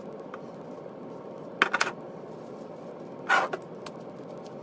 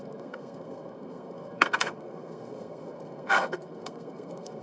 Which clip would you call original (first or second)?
first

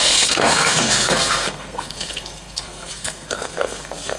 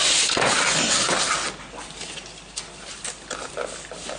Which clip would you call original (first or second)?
second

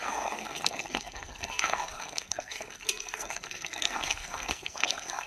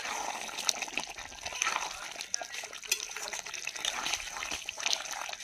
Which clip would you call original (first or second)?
second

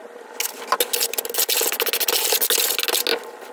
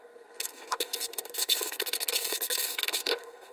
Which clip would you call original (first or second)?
first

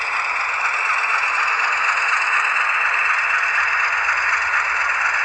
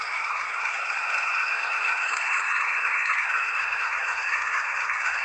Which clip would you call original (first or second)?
first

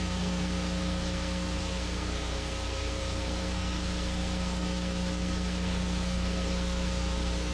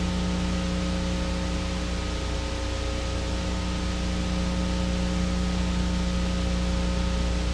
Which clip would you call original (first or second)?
second